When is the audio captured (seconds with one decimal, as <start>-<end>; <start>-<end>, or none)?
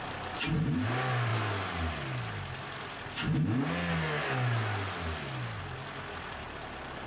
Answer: 0.0-7.1